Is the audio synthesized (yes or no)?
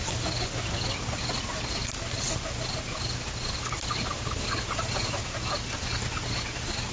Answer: no